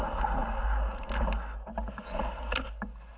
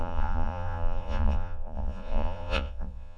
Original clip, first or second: first